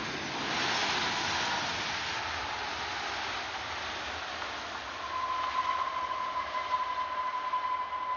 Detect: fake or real real